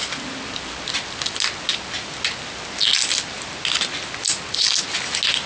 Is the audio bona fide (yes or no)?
yes